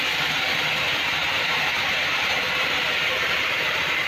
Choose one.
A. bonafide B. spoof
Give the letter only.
B